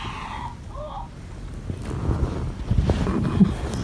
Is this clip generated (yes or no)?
no